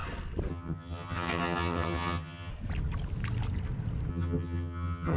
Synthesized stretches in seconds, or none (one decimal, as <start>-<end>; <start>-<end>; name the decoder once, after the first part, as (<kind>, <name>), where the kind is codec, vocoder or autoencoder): 0.5-2.5 (vocoder, HiFi-GAN); 4.1-5.2

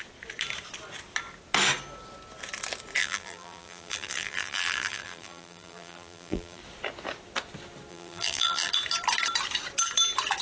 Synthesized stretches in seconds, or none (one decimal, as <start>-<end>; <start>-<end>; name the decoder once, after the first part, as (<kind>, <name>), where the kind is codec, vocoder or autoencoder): 3.0-6.6 (vocoder, BigVGAN v2); 7.9-8.7